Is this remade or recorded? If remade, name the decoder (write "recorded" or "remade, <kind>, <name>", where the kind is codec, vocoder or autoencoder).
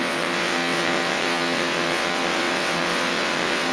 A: remade, vocoder, WaveNeXt